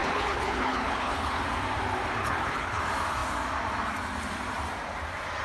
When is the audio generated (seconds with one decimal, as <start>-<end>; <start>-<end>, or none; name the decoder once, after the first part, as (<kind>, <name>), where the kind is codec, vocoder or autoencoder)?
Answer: 0.0-1.4 (codec, HILCodec); 2.2-2.8